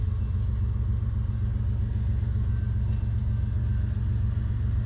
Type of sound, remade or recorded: recorded